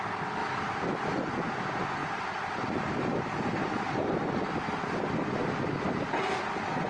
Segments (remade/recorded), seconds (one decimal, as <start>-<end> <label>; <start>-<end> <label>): 0.0-2.0 recorded; 2.0-6.1 remade; 6.1-6.9 recorded

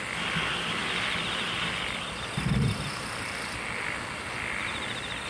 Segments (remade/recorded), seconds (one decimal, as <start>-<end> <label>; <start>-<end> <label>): 0.0-5.3 recorded